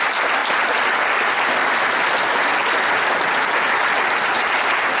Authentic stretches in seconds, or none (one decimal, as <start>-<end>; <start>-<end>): 0.0-5.0